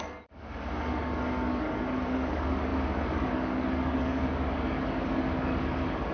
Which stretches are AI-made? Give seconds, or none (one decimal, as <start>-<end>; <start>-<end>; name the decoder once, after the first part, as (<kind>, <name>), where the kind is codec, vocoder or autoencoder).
0.0-6.1 (codec, DAC)